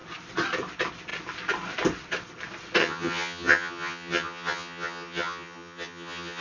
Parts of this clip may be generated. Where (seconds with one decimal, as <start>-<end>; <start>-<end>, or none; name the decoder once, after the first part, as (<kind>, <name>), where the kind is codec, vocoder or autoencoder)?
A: 2.8-6.4 (vocoder, HiFi-GAN)